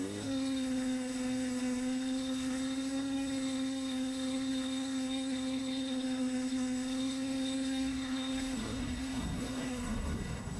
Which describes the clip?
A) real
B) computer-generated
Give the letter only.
B